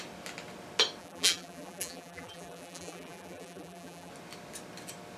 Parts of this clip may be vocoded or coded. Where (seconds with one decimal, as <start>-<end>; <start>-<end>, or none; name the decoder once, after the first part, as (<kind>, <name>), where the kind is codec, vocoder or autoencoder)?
1.0-4.1 (vocoder, BigVGAN v2)